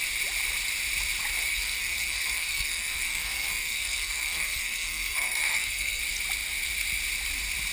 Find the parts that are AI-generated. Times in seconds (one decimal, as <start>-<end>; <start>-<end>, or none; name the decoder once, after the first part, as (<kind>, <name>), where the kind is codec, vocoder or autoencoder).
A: 1.5-6.0 (codec, SNAC)

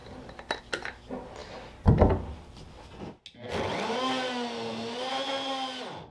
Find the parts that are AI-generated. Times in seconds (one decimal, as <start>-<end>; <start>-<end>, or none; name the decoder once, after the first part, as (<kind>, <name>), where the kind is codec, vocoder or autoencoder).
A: none